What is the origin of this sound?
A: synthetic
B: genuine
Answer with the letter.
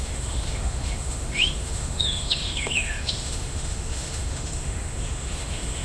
A